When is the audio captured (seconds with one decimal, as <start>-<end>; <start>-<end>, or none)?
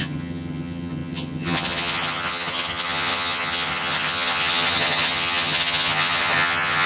none